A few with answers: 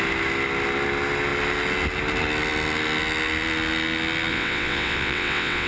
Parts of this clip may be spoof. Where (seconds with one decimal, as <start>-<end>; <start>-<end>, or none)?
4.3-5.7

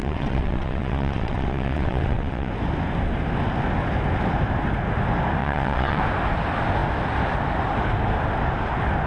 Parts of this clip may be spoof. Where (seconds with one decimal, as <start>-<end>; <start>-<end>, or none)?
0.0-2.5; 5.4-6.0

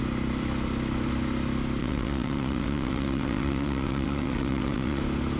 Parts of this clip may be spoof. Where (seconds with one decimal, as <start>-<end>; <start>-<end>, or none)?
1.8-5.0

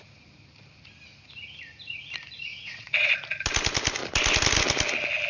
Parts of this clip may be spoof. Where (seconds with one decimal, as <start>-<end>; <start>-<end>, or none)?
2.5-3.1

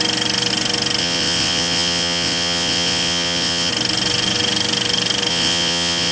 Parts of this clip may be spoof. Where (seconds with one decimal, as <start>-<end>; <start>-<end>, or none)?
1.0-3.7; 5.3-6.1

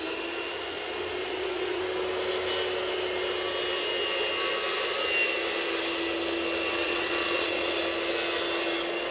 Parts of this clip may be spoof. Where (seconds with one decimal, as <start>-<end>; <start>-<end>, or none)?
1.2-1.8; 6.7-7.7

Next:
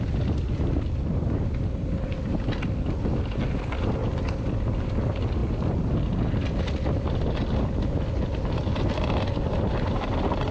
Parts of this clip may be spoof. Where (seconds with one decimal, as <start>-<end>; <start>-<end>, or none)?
none

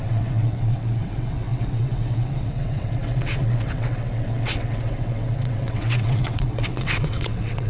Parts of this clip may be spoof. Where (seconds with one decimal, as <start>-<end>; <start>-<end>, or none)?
0.0-7.7